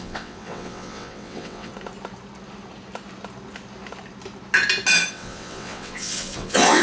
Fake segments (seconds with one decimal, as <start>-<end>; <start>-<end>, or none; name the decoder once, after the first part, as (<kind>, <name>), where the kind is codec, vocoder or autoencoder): 0.0-1.7 (vocoder, WaveNeXt); 5.1-6.8